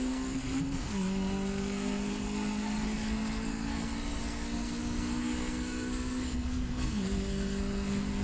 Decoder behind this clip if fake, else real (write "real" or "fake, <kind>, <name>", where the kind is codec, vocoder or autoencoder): fake, codec, SNAC